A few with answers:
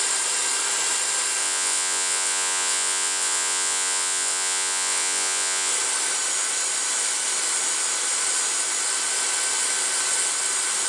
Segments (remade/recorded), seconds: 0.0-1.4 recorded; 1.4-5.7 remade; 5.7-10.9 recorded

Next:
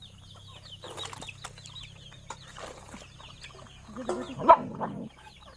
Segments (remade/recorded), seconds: 0.0-4.7 recorded; 4.7-5.6 remade